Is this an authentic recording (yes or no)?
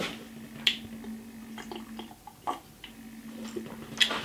yes